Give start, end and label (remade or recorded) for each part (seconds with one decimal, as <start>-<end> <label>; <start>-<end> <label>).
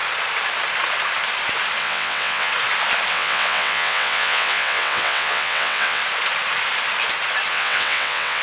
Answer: 0.0-1.8 recorded; 1.8-2.5 remade; 2.5-3.1 recorded; 3.1-6.0 remade; 6.0-7.5 recorded; 7.5-8.4 remade